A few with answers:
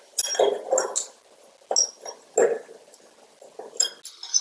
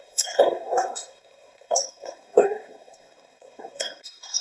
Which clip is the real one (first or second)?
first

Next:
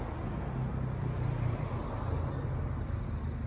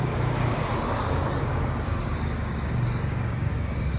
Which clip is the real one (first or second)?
first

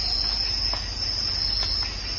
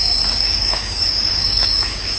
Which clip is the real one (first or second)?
first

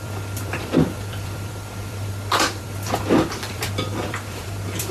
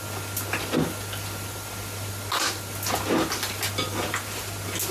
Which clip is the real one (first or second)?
second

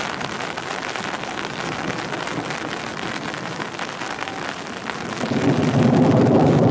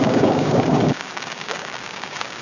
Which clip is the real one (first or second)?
first